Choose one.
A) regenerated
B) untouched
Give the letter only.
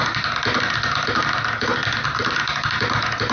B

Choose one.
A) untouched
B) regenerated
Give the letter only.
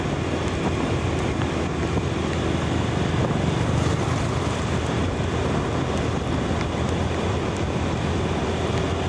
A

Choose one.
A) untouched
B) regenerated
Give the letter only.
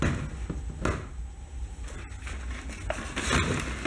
A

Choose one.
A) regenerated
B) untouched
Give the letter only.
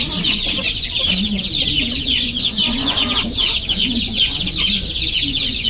A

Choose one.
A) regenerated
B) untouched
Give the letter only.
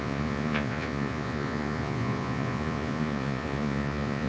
A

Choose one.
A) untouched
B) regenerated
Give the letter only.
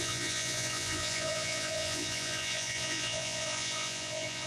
B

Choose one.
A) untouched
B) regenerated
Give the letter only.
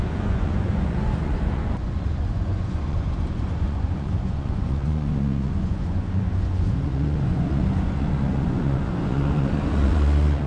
B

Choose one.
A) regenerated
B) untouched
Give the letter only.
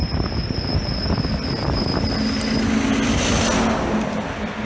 B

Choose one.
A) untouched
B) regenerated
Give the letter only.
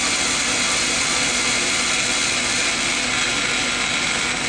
A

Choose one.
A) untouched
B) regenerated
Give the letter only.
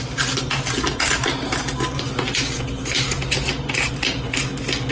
A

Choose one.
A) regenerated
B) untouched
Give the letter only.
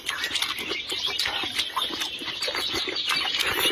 B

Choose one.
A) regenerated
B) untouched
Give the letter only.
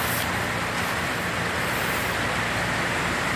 B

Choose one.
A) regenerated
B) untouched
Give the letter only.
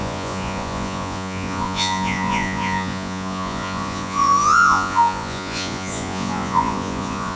A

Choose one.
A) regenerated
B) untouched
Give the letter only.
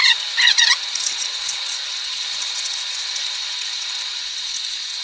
A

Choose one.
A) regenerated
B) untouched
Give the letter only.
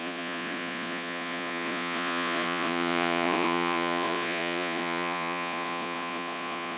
A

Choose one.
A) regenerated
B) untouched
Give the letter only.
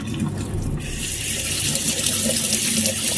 B